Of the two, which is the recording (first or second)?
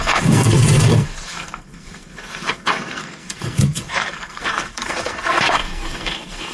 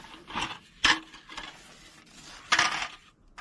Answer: second